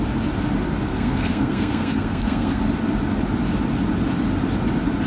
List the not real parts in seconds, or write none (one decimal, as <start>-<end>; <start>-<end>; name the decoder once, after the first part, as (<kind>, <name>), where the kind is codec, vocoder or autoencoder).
0.9-2.6 (codec, SNAC)